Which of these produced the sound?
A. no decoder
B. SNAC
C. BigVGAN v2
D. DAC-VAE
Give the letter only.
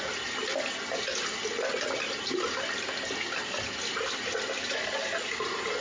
A